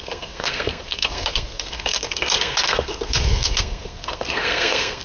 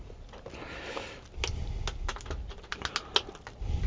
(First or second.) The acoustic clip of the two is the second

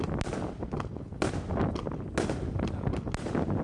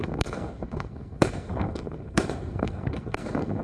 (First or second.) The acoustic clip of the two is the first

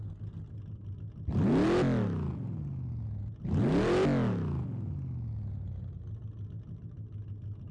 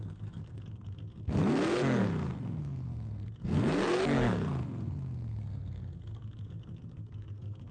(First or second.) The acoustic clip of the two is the first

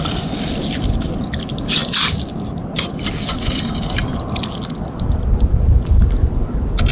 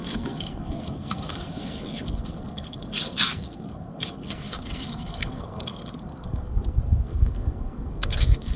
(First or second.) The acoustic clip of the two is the first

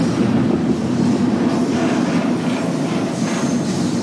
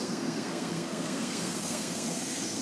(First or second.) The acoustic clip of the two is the first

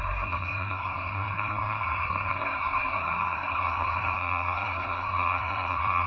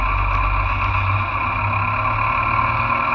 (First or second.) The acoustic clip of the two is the second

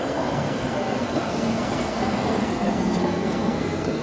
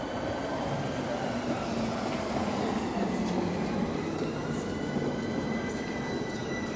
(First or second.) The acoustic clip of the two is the second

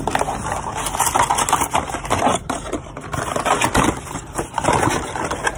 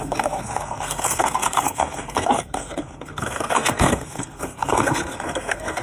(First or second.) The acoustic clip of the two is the first